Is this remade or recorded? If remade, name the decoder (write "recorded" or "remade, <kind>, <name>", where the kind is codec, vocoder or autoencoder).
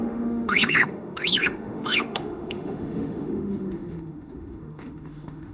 remade, autoencoder, DAC-VAE